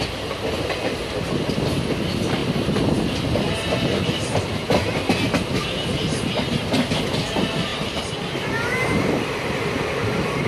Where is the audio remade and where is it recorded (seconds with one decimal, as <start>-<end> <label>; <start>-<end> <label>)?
0.0-7.7 recorded; 7.7-9.2 remade; 9.2-10.5 recorded